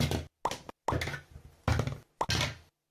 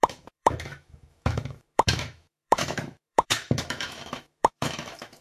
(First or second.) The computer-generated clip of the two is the second